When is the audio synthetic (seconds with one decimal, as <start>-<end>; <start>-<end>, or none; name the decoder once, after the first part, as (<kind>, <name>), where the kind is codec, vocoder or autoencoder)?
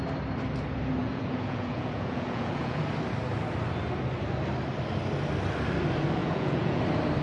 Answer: 1.0-2.8 (vocoder, Vocos); 6.2-6.8